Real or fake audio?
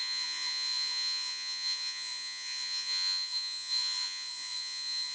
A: fake